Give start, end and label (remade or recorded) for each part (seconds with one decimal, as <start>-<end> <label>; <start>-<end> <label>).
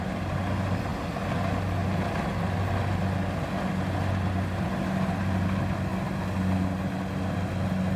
0.0-8.0 recorded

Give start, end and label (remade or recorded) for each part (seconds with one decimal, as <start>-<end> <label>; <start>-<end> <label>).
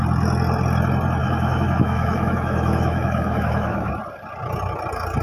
0.0-1.2 recorded; 1.2-3.9 remade; 3.9-5.2 recorded